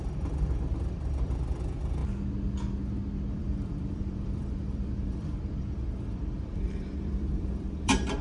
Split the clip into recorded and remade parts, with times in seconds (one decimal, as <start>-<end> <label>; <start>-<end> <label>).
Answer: 0.0-2.0 remade; 2.0-3.3 recorded; 3.3-8.2 remade